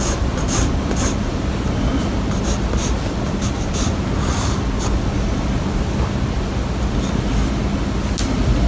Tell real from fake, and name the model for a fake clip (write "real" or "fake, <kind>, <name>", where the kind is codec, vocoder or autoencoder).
real